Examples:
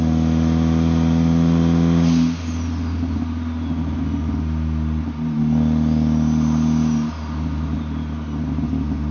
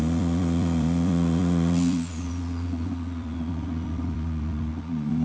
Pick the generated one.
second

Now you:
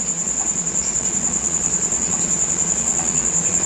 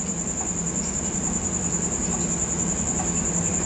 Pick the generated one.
first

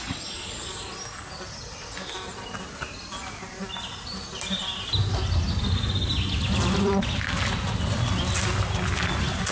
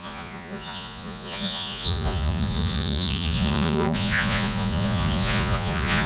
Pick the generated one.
second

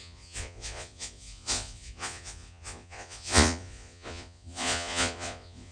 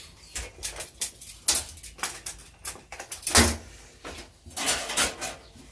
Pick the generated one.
first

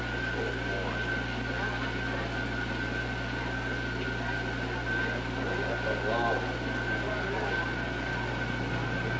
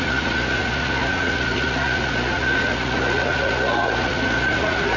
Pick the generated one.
second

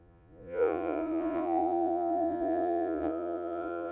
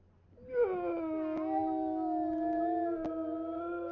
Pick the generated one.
first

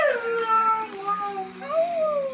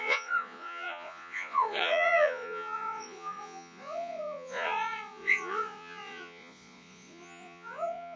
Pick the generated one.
second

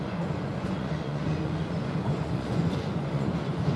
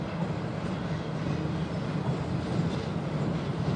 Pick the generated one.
first